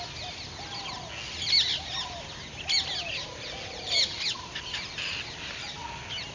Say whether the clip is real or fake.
real